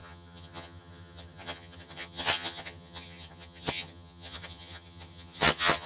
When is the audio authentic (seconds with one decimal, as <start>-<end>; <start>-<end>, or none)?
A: none